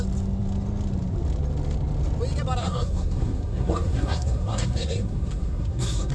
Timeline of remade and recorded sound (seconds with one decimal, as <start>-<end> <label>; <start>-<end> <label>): 0.0-2.6 recorded; 2.6-6.1 remade